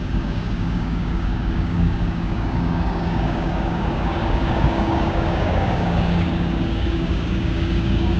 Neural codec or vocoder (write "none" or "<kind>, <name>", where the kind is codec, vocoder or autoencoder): codec, DAC